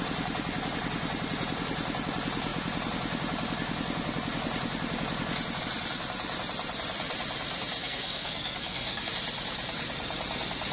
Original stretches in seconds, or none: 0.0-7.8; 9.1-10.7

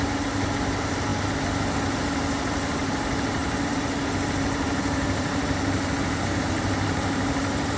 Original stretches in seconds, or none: 1.1-1.9

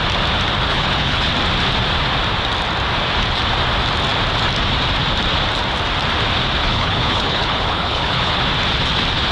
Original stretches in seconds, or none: 0.0-0.7; 1.3-6.6; 8.4-9.3